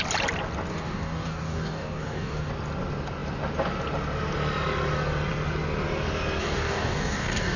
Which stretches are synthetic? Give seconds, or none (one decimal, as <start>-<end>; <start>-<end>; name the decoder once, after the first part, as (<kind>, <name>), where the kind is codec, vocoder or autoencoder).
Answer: 0.7-2.5 (codec, DAC); 6.4-7.6